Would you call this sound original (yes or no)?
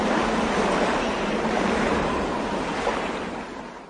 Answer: no